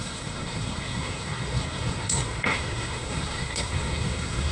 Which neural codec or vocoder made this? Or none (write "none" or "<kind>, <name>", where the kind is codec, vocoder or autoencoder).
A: codec, SNAC